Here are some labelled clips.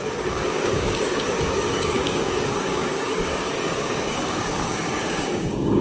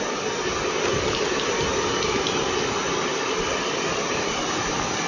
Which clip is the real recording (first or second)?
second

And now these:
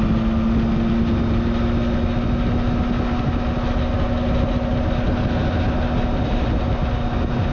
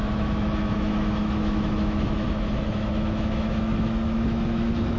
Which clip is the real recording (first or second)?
first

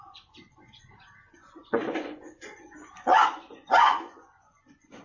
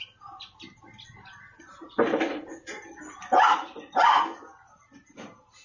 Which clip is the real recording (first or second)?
second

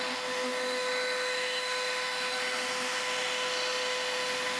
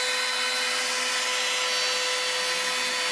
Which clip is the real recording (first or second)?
second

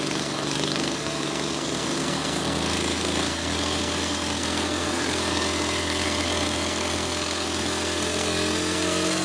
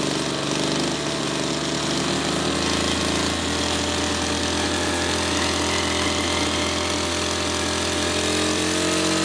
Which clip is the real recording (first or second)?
second